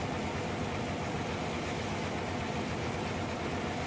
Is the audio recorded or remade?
recorded